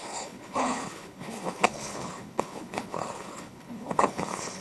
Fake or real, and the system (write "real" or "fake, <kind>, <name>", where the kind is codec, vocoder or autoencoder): fake, codec, HILCodec